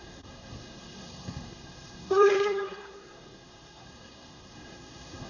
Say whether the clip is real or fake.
fake